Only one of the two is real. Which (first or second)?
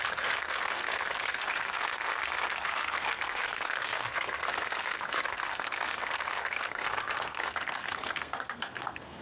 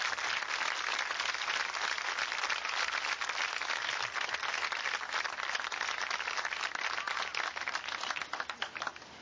second